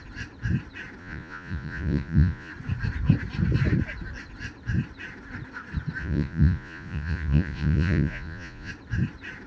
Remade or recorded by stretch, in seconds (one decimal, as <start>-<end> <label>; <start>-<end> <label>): 0.0-1.0 recorded; 1.0-2.5 remade; 2.5-6.0 recorded; 6.0-8.7 remade; 8.7-9.5 recorded